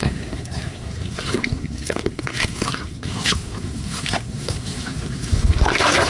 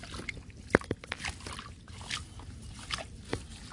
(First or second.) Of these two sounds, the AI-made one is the first